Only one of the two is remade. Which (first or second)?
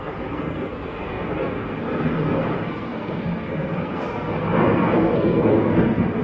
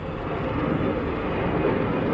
first